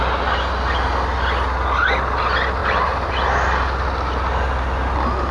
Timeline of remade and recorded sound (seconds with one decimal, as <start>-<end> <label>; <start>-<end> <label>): 0.0-2.6 recorded; 2.6-3.1 remade; 3.1-5.3 recorded

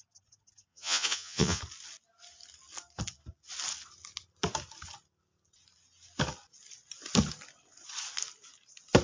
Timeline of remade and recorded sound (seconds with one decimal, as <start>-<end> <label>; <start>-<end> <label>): 0.0-0.7 recorded; 0.7-1.6 remade; 1.6-9.0 recorded

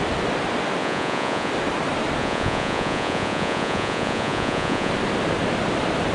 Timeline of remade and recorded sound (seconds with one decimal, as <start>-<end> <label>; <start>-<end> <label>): 0.0-0.8 recorded; 0.8-1.5 remade; 1.5-2.2 recorded; 2.2-4.9 remade; 4.9-6.1 recorded

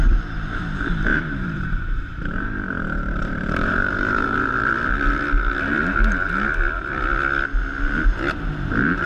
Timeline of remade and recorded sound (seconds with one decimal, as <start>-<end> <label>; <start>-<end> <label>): 0.0-1.1 recorded; 1.1-4.5 remade; 4.5-9.1 recorded

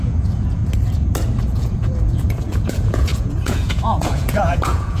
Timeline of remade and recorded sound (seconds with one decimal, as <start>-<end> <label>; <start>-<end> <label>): 0.0-0.6 remade; 0.6-1.4 recorded; 1.4-5.0 remade

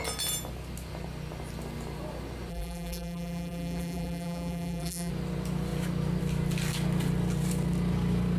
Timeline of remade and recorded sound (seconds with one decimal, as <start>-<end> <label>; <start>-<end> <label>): 0.0-2.5 recorded; 2.5-5.1 remade; 5.1-8.4 recorded

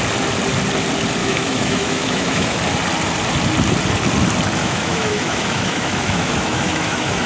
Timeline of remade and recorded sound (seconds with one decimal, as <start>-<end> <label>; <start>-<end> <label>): 0.0-1.2 recorded; 1.2-2.6 remade; 2.6-4.6 recorded; 4.6-7.3 remade

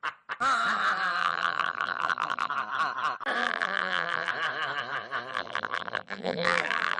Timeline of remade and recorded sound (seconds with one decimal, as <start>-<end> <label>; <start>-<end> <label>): 0.0-1.2 recorded; 1.2-2.5 remade; 2.5-3.4 recorded; 3.4-4.3 remade; 4.3-5.3 recorded; 5.3-7.0 remade